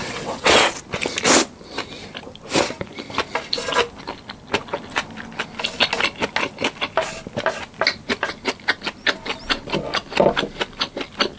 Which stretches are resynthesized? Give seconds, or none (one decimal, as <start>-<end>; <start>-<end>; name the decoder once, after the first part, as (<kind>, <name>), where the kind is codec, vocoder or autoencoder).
0.0-0.6 (vocoder, WaveNeXt)